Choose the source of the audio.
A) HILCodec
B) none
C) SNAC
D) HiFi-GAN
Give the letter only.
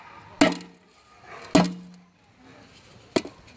B